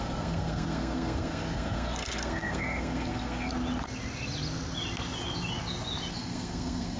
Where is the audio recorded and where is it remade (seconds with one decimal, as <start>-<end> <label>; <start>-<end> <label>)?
0.0-3.5 remade; 3.5-6.1 recorded; 6.1-7.0 remade